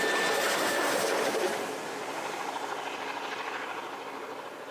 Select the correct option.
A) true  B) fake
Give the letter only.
A